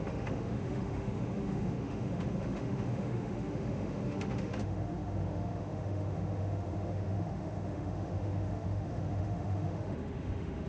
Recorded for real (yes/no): no